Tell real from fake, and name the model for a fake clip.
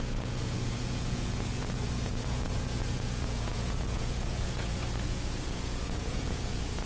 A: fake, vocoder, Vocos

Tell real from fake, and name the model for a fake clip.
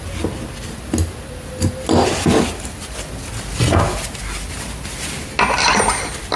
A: real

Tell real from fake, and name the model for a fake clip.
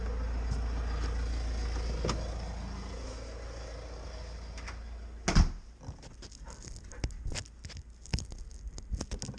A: real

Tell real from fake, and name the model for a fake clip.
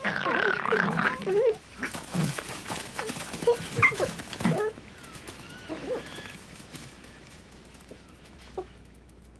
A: fake, autoencoder, DAC-VAE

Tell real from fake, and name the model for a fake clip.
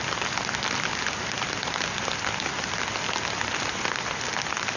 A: real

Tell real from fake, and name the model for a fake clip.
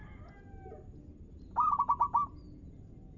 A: real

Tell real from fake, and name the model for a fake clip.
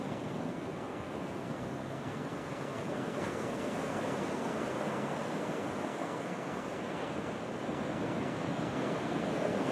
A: fake, codec, SNAC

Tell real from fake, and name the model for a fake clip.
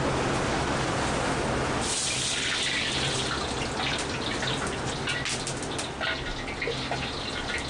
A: real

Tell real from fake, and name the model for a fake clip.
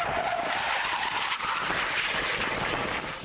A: real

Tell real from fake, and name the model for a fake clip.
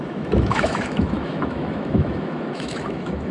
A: fake, autoencoder, DAC-VAE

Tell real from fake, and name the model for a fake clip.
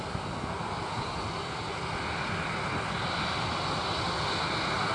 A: real